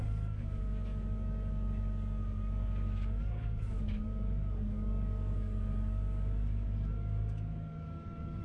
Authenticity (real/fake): fake